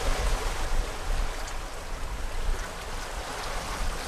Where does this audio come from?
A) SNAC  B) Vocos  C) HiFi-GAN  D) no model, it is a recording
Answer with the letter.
D